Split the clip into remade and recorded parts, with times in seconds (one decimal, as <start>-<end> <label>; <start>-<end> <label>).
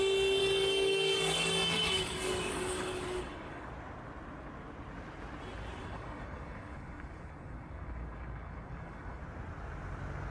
0.0-0.4 recorded; 0.4-3.7 remade; 3.7-5.8 recorded; 5.8-9.2 remade; 9.2-10.3 recorded